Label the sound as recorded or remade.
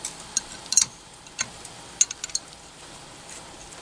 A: recorded